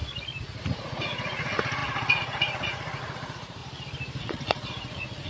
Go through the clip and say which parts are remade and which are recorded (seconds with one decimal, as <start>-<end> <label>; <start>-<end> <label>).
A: 0.0-0.6 recorded; 0.6-3.6 remade; 3.6-4.2 recorded; 4.2-5.3 remade